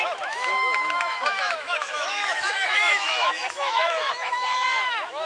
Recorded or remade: remade